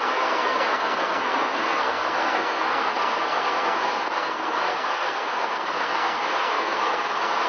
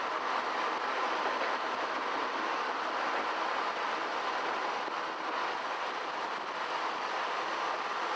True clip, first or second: second